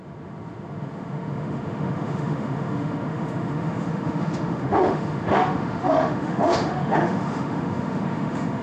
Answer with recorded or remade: remade